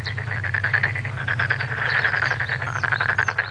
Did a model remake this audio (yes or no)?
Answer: yes